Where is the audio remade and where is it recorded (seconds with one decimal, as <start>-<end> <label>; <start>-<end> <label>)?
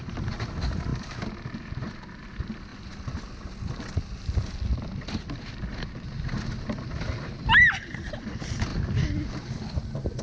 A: 0.0-10.2 recorded